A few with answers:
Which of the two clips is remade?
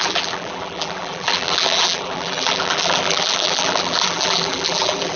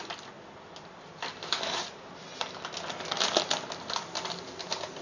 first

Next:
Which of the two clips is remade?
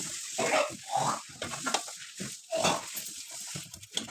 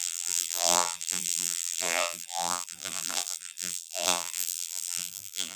second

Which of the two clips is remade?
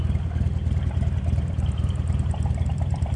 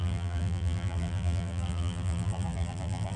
second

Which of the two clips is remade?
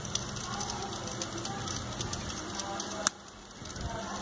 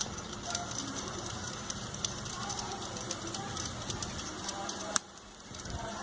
second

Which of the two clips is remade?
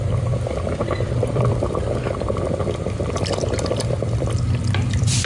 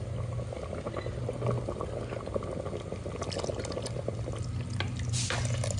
first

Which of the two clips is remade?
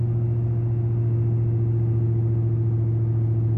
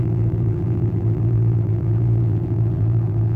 second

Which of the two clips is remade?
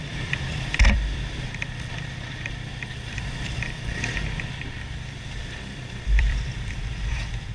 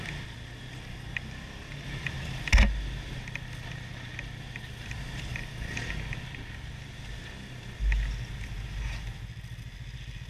first